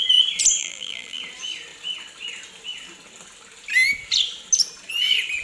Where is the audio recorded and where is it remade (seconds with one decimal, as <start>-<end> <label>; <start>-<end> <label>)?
0.0-0.6 recorded; 0.6-1.2 remade; 1.2-5.4 recorded